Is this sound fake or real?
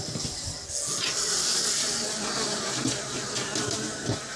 real